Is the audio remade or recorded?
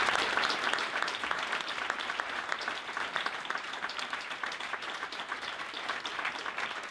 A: remade